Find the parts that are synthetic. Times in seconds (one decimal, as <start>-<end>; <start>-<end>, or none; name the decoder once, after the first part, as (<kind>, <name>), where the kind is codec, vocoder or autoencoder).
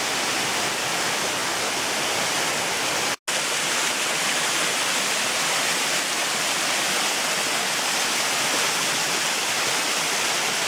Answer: none